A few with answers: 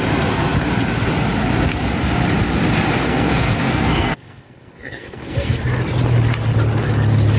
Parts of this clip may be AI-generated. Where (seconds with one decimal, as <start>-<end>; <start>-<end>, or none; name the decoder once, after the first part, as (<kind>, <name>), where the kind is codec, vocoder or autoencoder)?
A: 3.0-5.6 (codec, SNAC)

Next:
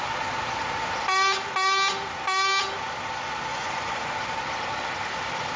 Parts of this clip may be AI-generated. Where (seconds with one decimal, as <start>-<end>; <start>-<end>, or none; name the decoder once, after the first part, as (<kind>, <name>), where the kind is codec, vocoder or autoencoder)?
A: 3.5-4.1 (vocoder, Vocos)

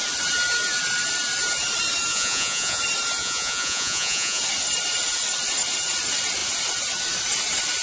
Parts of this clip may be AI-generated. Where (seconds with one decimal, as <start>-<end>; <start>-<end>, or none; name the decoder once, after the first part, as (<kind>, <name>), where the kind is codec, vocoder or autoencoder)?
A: 2.1-2.8 (vocoder, Vocos); 3.2-4.4